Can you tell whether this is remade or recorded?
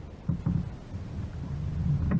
recorded